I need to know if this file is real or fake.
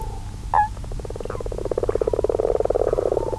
real